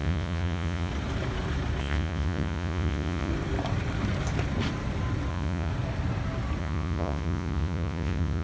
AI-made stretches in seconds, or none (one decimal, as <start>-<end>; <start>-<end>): 0.0-0.9; 1.8-3.3; 5.3-5.7; 6.6-8.4

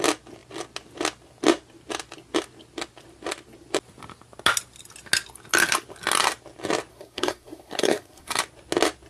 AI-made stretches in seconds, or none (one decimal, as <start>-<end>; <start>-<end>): 6.9-8.4

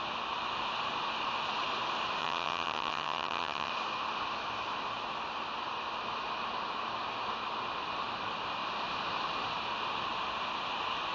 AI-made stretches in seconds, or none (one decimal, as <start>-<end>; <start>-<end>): 2.2-3.7